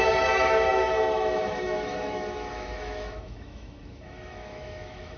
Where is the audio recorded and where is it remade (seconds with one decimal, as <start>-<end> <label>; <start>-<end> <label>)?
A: 0.0-5.2 remade